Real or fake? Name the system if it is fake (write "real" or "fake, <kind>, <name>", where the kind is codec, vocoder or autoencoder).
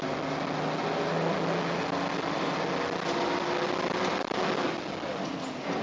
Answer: real